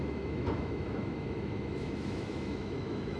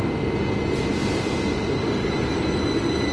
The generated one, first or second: first